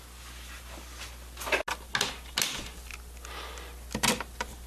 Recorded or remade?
recorded